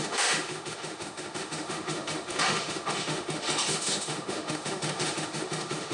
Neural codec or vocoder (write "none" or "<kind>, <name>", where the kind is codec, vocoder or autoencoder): autoencoder, DAC-VAE